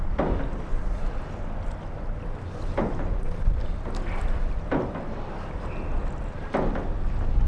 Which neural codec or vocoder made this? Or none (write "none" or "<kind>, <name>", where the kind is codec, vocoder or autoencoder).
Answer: none